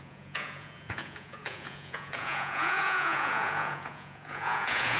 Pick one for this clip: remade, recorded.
remade